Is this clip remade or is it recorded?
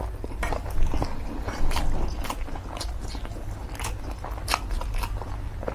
recorded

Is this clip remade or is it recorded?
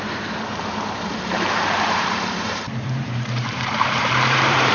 remade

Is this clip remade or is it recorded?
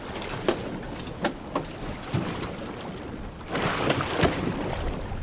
recorded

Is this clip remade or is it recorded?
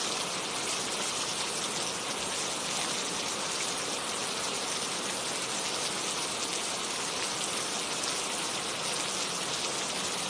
recorded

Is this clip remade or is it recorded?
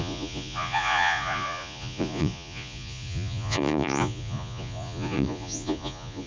remade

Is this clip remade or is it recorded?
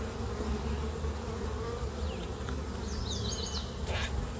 recorded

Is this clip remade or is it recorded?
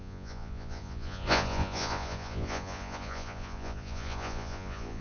remade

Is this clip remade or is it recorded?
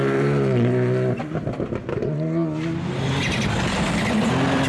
recorded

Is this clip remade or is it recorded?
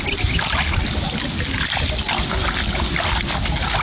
recorded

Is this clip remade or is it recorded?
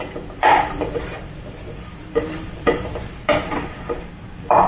remade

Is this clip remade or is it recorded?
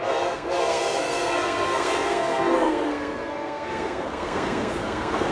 remade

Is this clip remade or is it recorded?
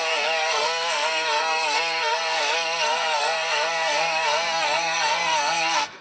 remade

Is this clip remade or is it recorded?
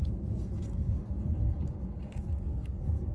remade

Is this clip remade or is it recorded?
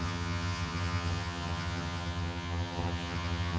remade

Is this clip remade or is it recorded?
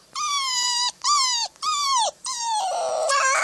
remade